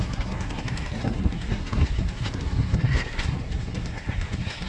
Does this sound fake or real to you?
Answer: fake